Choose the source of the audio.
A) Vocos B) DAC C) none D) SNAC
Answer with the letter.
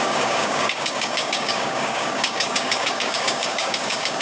B